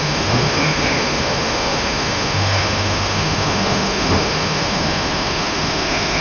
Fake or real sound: fake